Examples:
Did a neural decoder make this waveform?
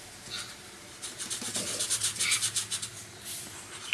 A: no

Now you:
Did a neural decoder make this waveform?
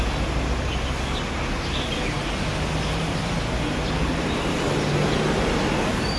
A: no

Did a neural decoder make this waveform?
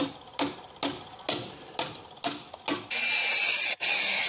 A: no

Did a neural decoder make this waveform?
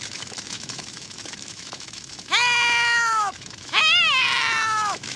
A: yes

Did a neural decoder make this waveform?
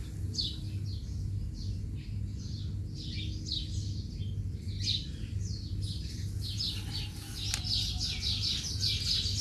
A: no